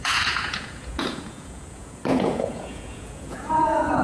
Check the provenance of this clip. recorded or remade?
remade